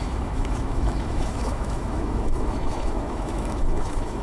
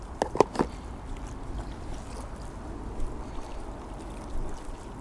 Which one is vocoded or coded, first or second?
first